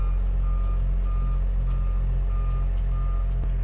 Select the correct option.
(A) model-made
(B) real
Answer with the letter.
B